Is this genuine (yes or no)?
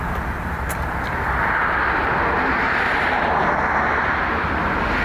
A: yes